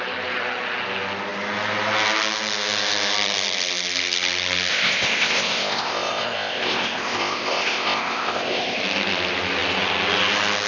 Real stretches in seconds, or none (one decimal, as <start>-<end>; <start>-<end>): 0.0-4.7; 8.8-10.7